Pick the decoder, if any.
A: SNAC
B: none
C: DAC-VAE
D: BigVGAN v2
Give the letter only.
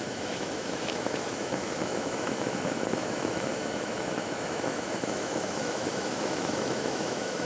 C